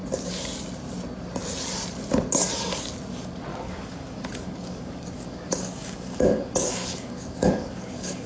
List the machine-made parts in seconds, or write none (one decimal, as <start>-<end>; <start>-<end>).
3.5-8.3